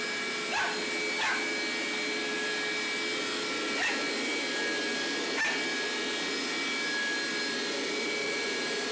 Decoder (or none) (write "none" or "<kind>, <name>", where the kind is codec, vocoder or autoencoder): none